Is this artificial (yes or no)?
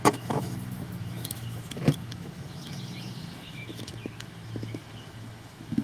yes